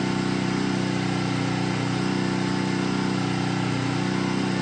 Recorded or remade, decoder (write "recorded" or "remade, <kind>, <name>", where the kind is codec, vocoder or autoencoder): recorded